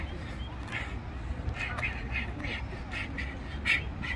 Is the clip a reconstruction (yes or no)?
no